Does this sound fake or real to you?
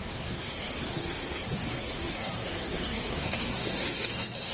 fake